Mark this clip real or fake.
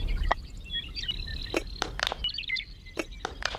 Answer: real